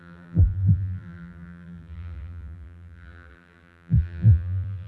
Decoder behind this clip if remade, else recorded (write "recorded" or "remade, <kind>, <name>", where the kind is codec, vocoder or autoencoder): remade, vocoder, BigVGAN v2